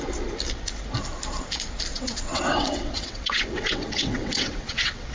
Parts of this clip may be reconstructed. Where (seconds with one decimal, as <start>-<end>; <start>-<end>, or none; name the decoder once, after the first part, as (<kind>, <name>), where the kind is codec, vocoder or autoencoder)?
1.9-5.1 (vocoder, WaveNeXt)